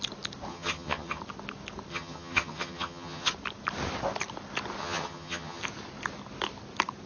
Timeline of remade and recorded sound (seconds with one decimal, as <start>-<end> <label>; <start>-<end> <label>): 0.0-0.5 recorded; 0.5-1.2 remade; 1.2-1.9 recorded; 1.9-3.3 remade; 3.3-4.8 recorded; 4.8-5.6 remade; 5.6-7.1 recorded